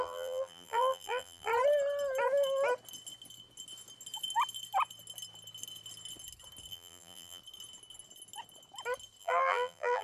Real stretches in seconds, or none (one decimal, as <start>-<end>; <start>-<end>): 1.5-6.7; 7.4-9.2